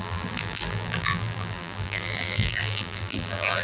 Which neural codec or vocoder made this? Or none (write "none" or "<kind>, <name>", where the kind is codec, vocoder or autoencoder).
vocoder, BigVGAN v2